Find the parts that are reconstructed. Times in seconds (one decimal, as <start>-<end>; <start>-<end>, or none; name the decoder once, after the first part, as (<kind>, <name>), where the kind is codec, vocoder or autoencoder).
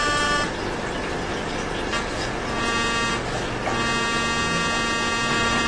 0.0-1.9 (vocoder, BigVGAN v2); 5.3-5.7